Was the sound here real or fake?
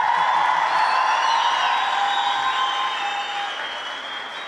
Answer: real